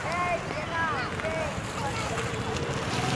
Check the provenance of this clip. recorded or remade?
recorded